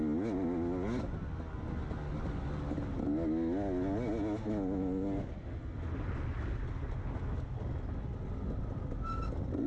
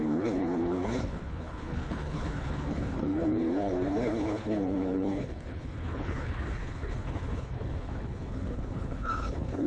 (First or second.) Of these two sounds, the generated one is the second